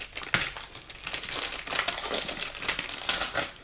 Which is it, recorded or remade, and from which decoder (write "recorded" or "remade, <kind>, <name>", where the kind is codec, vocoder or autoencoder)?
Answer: recorded